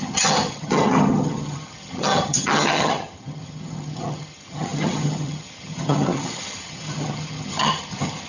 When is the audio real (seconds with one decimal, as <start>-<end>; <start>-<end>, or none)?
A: none